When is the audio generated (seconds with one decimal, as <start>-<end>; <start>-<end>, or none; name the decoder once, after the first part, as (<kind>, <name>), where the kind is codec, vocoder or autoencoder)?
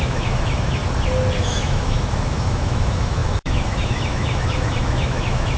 0.0-0.8 (autoencoder, DAC-VAE); 1.4-5.6